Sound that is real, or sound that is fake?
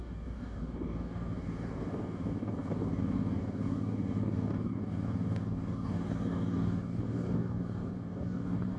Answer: fake